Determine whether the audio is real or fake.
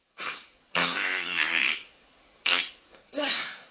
fake